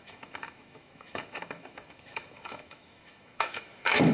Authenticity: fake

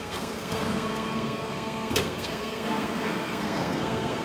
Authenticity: fake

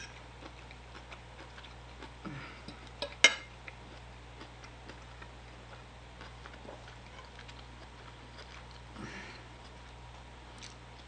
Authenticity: real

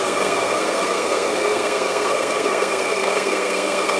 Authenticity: fake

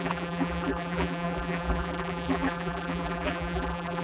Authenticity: fake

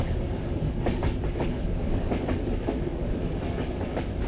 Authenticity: fake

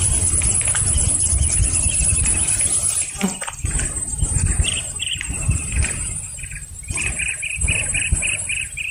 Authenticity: fake